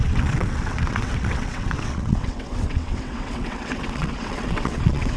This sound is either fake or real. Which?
fake